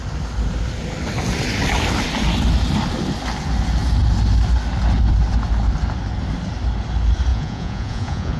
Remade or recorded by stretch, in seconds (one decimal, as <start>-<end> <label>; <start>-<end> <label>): 0.0-7.3 recorded; 7.3-8.4 remade